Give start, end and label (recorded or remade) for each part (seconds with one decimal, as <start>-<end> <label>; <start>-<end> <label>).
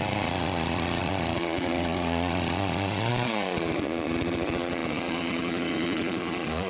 0.0-6.7 remade